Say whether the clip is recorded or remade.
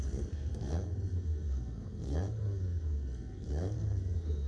remade